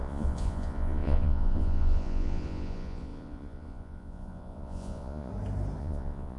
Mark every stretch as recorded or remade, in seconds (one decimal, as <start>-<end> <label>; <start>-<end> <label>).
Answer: 0.0-5.3 remade; 5.3-5.8 recorded; 5.8-6.4 remade